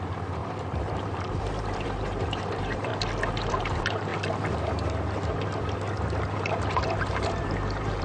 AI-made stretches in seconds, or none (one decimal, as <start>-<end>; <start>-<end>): 0.0-0.4; 1.6-2.9; 3.5-4.1; 7.0-8.0